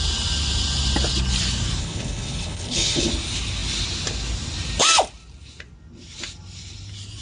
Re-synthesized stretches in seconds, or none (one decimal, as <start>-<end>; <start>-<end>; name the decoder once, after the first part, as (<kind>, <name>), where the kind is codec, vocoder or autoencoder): 1.8-3.1 (codec, HILCodec)